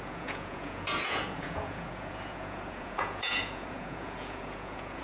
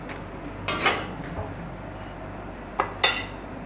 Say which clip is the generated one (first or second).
first